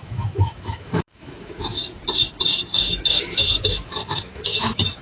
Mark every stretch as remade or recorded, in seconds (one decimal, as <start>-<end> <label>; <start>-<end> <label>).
0.0-1.8 remade; 1.8-2.7 recorded; 2.7-5.0 remade